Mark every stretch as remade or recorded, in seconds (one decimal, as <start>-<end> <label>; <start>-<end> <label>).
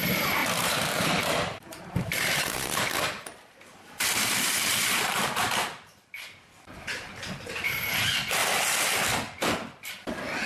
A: 0.0-0.4 recorded; 0.4-5.5 remade; 5.5-10.5 recorded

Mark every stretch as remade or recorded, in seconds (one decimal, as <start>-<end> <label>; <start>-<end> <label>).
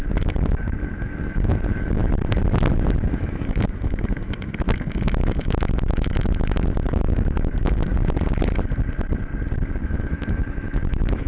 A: 0.0-2.0 remade; 2.0-3.1 recorded; 3.1-7.9 remade; 7.9-9.8 recorded; 9.8-11.3 remade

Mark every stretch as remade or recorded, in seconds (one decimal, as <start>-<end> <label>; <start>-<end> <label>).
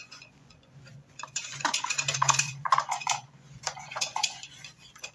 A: 0.0-5.1 remade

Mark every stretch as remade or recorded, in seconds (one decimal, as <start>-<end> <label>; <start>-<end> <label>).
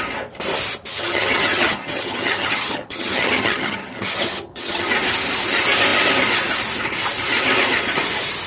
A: 0.0-0.9 recorded; 0.9-4.9 remade; 4.9-8.5 recorded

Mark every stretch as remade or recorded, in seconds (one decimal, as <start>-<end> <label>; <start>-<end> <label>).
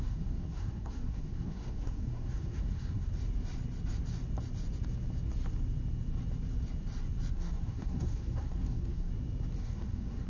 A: 0.0-3.1 remade; 3.1-7.3 recorded; 7.3-9.1 remade; 9.1-9.6 recorded; 9.6-10.3 remade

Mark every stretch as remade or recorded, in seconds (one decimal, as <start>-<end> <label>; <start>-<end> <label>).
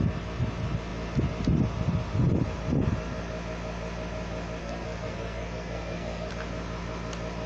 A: 0.0-4.6 recorded; 4.6-6.3 remade; 6.3-7.5 recorded